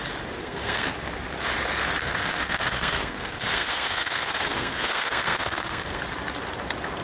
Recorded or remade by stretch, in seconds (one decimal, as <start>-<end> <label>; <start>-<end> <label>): 0.0-0.4 recorded; 0.4-0.9 remade; 0.9-2.0 recorded; 2.0-6.0 remade; 6.0-7.0 recorded